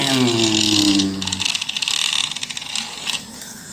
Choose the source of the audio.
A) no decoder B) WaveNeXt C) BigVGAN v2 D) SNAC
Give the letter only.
A